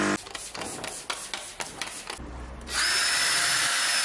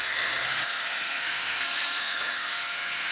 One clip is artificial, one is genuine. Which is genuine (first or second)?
first